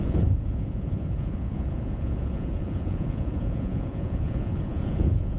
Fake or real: fake